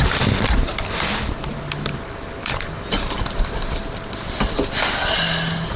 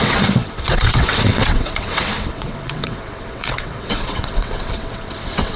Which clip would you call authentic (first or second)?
first